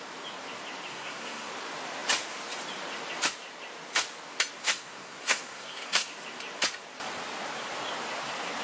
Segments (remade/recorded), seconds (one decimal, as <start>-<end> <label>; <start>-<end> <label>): 0.0-0.9 recorded; 0.9-1.5 remade; 1.5-4.6 recorded; 4.6-6.1 remade; 6.1-8.6 recorded